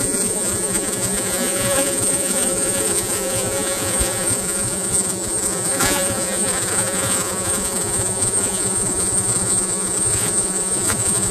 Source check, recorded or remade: remade